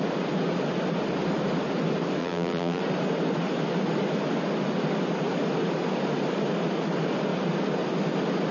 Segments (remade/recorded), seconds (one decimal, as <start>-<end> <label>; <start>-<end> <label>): 0.0-2.2 recorded; 2.2-2.8 remade; 2.8-8.5 recorded

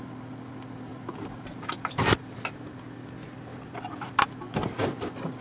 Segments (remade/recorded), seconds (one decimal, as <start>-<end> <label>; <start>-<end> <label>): 0.0-0.9 recorded; 0.9-2.7 remade; 2.7-3.5 recorded; 3.5-4.3 remade; 4.3-5.4 recorded

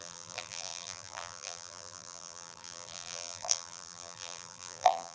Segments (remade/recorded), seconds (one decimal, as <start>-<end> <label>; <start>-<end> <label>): 0.0-5.1 remade

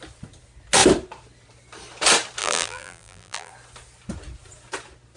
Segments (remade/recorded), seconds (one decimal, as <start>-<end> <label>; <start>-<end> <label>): 0.0-2.4 recorded; 2.4-3.5 remade; 3.5-5.2 recorded

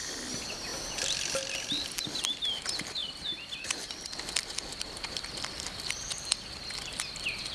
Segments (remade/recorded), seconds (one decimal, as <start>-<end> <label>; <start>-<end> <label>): 0.0-3.0 recorded; 3.0-3.5 remade; 3.5-7.5 recorded